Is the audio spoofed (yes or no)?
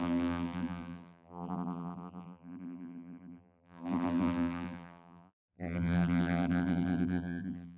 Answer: yes